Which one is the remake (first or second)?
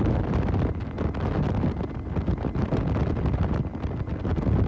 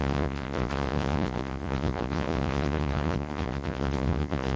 second